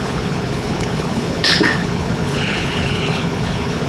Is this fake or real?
fake